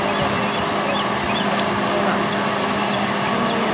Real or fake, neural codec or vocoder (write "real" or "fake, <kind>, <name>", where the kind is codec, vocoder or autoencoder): real